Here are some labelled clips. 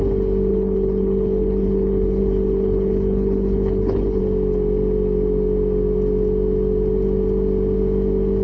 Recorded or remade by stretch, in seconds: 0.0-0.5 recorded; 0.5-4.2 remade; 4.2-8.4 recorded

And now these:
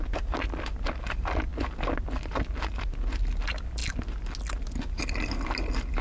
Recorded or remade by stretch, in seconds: 0.0-6.0 recorded

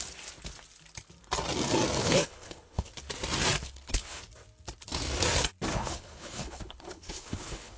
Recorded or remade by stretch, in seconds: 0.0-2.0 recorded; 2.0-2.9 remade; 2.9-3.6 recorded; 3.6-4.2 remade; 4.2-5.7 recorded; 5.7-7.8 remade

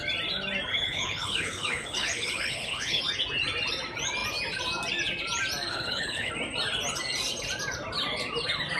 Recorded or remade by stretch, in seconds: 0.0-0.7 recorded; 0.7-3.0 remade; 3.0-5.7 recorded; 5.7-6.3 remade; 6.3-8.8 recorded

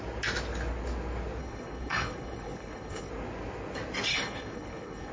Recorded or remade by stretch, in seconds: 0.0-1.4 recorded; 1.4-3.1 remade; 3.1-4.1 recorded; 4.1-5.1 remade

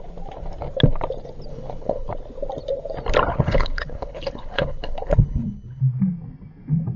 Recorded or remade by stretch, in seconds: 0.0-1.5 recorded; 1.5-2.1 remade; 2.1-3.3 recorded; 3.3-5.8 remade; 5.8-7.0 recorded